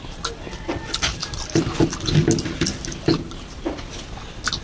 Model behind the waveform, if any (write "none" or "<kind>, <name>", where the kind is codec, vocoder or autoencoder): none